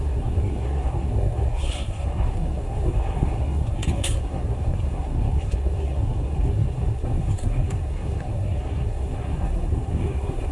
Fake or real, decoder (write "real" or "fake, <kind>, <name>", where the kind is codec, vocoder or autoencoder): fake, codec, SNAC